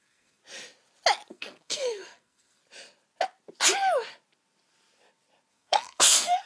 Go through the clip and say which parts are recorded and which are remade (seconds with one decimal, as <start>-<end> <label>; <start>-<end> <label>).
0.0-0.4 remade; 0.4-1.3 recorded; 1.3-2.6 remade; 2.6-5.5 recorded; 5.5-6.5 remade